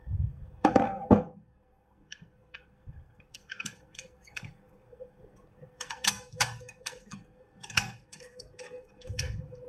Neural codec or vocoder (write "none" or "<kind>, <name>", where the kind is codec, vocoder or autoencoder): codec, SNAC